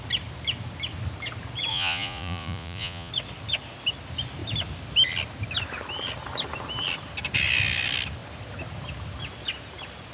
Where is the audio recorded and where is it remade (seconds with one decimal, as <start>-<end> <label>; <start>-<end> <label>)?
0.0-1.7 recorded; 1.7-3.1 remade; 3.1-10.1 recorded